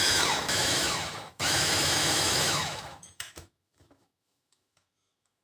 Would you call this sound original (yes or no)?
no